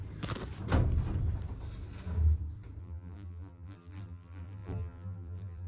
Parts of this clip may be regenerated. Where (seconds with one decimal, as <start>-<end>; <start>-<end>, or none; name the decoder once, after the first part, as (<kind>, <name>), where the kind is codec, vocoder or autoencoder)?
2.8-5.7 (vocoder, BigVGAN v2)